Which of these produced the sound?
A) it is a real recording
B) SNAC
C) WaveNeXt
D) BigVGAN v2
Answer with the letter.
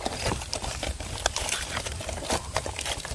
D